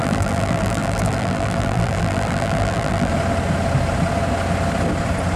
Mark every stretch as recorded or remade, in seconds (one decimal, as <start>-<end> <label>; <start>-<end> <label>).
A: 0.0-3.1 remade; 3.1-5.4 recorded

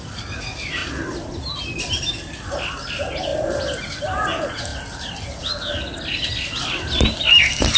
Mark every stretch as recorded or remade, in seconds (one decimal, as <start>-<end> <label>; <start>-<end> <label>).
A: 0.0-7.8 recorded

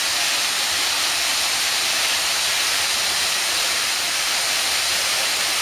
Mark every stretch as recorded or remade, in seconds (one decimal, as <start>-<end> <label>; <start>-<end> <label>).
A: 0.0-1.3 recorded; 1.3-4.3 remade; 4.3-5.6 recorded